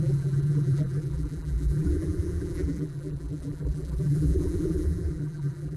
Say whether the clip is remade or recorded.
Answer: remade